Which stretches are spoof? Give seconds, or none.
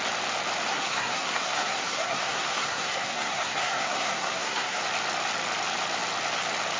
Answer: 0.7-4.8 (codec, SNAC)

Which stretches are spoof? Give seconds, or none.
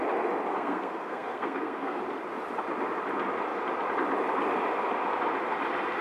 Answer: 0.5-2.0 (codec, SNAC)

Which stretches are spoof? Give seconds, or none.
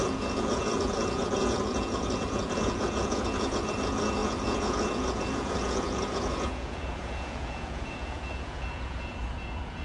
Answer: 0.0-9.8 (vocoder, Vocos)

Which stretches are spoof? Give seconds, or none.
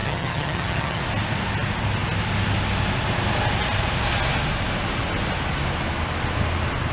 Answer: 0.0-1.0 (vocoder, HiFi-GAN)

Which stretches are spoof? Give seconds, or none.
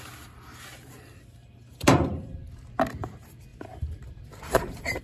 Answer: 1.4-2.4 (vocoder, BigVGAN v2); 3.5-5.0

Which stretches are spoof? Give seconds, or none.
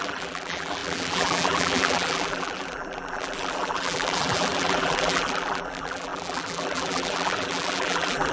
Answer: 0.0-8.3 (vocoder, BigVGAN v2)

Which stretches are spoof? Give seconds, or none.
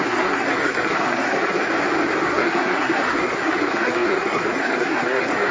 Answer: 0.0-1.7 (codec, SNAC); 2.2-5.5